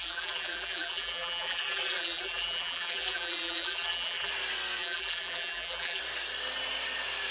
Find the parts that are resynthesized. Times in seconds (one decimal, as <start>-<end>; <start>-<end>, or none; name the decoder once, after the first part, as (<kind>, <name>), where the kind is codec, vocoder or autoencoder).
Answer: 0.0-4.3 (vocoder, BigVGAN v2); 4.8-6.0